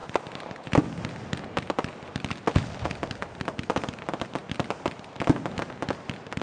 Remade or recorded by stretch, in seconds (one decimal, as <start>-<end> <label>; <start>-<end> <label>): 0.0-6.4 recorded